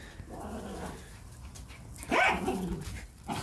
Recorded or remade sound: recorded